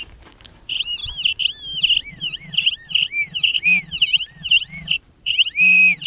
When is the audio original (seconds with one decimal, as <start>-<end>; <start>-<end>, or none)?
1.0-2.1